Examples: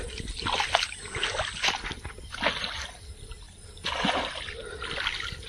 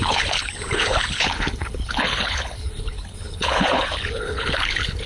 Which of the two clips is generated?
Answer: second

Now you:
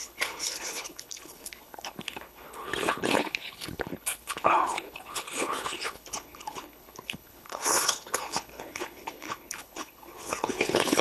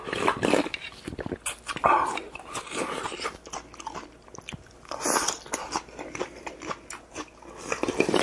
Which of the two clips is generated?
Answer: first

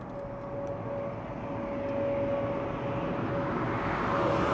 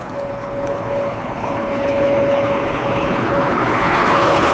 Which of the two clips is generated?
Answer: second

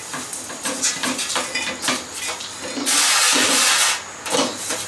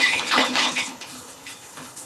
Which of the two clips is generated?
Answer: second